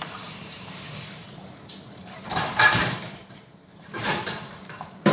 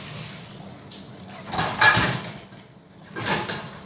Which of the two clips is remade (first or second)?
first